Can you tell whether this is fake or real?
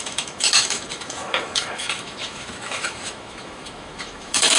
fake